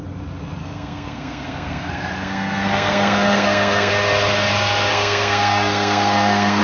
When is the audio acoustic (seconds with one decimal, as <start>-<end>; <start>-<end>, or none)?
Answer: 0.0-0.6; 3.9-4.9